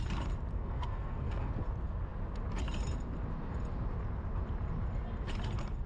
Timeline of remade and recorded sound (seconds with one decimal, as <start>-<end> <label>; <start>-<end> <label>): 0.0-0.5 recorded; 0.5-1.5 remade; 1.5-5.9 recorded